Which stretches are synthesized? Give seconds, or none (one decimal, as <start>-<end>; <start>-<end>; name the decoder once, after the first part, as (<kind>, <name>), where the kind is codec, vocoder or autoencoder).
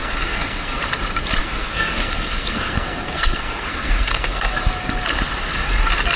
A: 0.0-0.8 (codec, SNAC); 1.4-4.6